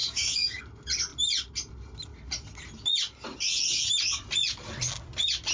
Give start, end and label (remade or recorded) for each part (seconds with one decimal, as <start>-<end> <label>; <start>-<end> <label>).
0.0-0.6 remade; 0.6-5.5 recorded